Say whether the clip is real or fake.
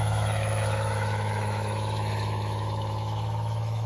fake